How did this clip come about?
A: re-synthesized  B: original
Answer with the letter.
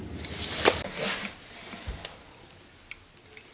B